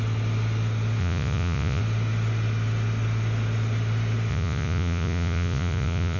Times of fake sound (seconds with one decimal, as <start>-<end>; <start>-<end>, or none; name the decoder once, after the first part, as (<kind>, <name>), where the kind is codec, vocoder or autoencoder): 1.0-1.8 (vocoder, Vocos); 4.3-6.2

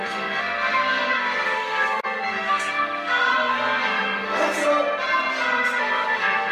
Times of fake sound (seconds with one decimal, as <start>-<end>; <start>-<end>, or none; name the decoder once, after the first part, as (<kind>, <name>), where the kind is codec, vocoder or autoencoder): 0.0-4.6 (codec, SNAC); 5.3-6.5

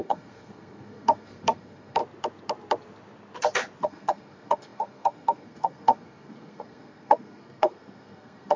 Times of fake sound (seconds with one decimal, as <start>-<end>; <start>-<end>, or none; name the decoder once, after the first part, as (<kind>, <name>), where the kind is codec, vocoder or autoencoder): 0.0-2.0 (codec, SNAC); 3.8-8.6

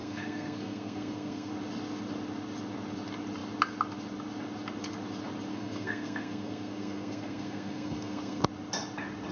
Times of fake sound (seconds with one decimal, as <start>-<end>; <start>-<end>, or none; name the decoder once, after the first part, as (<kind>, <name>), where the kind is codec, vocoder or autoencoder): 0.0-1.5 (codec, SNAC); 5.5-8.4

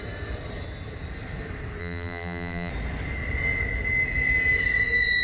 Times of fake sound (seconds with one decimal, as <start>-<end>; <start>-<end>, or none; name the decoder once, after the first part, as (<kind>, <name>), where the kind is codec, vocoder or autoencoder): 1.8-2.7 (vocoder, BigVGAN v2)

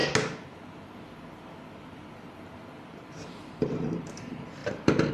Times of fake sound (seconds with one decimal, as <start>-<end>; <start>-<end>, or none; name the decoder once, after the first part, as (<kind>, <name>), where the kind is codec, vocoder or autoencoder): 3.1-5.1 (vocoder, BigVGAN v2)